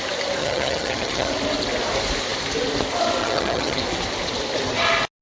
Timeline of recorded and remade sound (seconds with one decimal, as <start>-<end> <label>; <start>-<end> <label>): 0.0-0.4 recorded; 0.4-1.3 remade; 1.3-3.2 recorded; 3.2-3.8 remade; 3.8-5.2 recorded